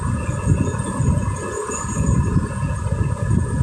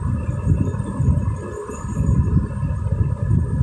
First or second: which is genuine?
second